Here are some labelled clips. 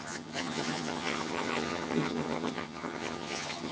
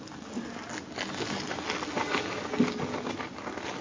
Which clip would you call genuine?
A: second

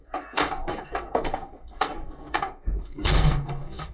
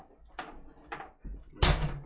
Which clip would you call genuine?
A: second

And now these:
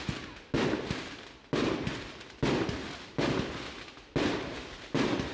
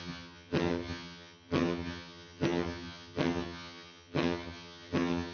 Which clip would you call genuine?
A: first